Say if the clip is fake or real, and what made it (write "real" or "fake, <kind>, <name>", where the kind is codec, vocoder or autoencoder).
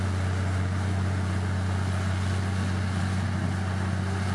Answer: real